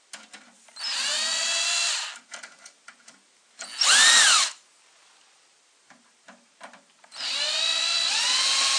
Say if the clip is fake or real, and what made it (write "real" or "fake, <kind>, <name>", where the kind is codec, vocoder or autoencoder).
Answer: real